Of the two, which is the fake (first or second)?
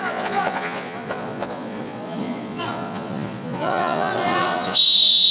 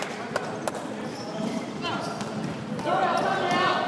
first